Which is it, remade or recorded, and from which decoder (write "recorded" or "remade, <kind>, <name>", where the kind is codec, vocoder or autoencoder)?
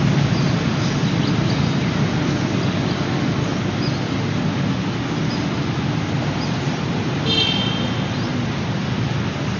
recorded